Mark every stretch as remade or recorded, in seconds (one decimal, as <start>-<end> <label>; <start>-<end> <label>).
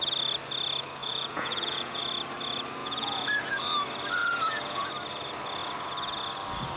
0.0-1.0 recorded; 1.0-2.0 remade; 2.0-2.8 recorded; 2.8-3.6 remade; 3.6-4.2 recorded; 4.2-4.9 remade; 4.9-6.8 recorded